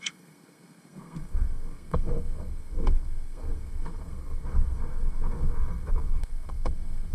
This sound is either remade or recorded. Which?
remade